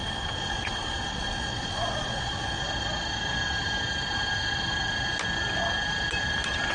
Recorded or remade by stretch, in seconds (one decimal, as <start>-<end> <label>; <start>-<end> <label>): 0.0-2.6 remade; 2.6-6.7 recorded